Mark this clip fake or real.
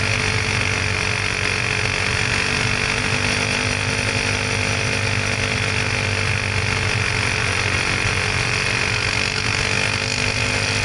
real